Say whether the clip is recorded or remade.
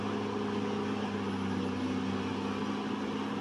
recorded